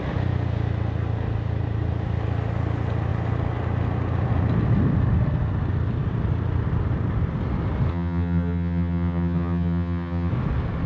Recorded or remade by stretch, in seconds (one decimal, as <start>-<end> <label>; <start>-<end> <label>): 0.0-7.9 recorded; 7.9-10.3 remade; 10.3-10.9 recorded